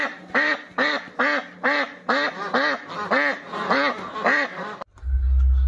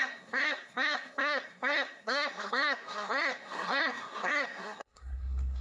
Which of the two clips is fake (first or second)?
second